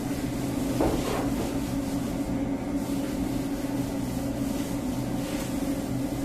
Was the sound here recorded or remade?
recorded